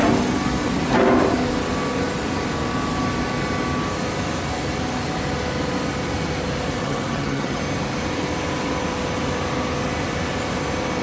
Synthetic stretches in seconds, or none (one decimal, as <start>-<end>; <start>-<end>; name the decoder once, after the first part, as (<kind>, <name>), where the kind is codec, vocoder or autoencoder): 6.8-7.6 (vocoder, HiFi-GAN)